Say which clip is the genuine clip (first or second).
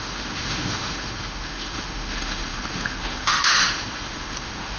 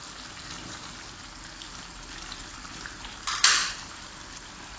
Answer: second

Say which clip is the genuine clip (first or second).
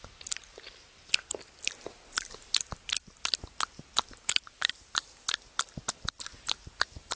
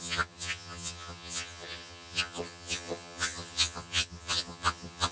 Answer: first